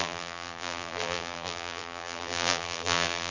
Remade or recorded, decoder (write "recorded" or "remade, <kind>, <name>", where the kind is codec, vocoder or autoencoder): remade, vocoder, BigVGAN v2